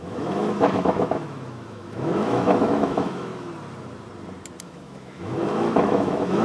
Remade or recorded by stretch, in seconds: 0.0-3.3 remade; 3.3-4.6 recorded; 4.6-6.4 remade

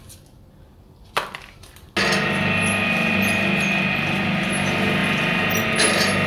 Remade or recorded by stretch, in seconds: 0.0-6.3 recorded

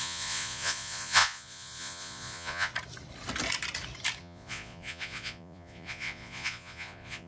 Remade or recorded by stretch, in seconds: 0.0-2.7 remade; 2.7-4.2 recorded; 4.2-7.3 remade